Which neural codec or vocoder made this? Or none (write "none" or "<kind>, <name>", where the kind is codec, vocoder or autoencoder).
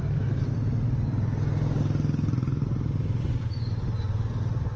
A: none